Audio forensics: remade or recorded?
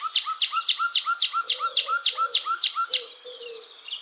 remade